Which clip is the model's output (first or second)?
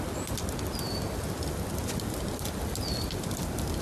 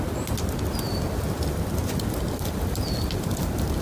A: second